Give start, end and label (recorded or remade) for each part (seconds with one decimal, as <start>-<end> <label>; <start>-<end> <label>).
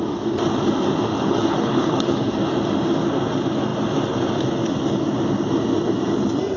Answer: 0.0-1.1 recorded; 1.1-2.3 remade; 2.3-6.6 recorded